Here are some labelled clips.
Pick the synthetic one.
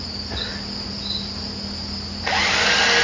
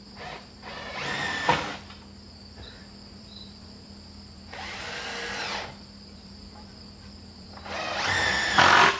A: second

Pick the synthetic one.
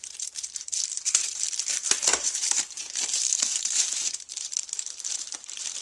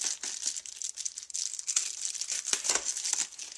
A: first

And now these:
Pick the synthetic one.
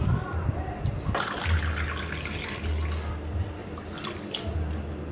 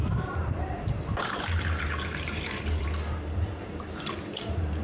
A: second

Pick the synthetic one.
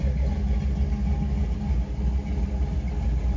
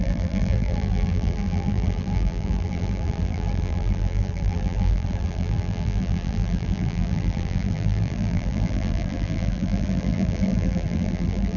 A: second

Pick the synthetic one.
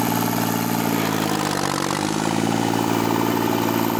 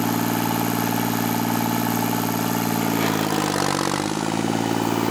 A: first